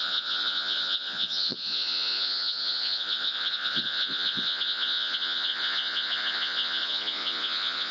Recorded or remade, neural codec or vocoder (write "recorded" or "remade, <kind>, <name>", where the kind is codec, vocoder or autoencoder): remade, vocoder, Vocos